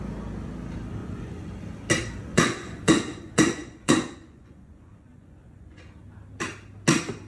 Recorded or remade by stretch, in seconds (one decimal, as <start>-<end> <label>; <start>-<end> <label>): 0.0-1.0 recorded; 1.0-1.5 remade; 1.5-2.3 recorded; 2.3-5.8 remade; 5.8-7.3 recorded